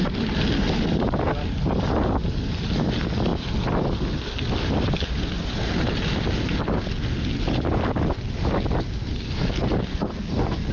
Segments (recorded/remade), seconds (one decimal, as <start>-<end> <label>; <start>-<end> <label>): 0.0-9.9 recorded; 9.9-10.7 remade